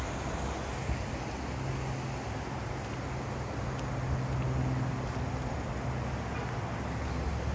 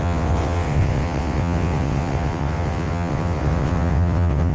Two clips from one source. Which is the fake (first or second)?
second